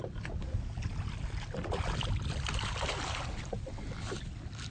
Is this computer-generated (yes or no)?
no